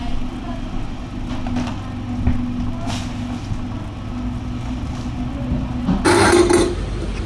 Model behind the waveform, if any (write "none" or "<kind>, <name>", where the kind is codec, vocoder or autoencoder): none